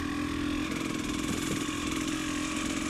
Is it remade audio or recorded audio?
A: recorded